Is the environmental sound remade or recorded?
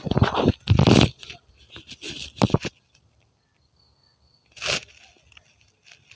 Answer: recorded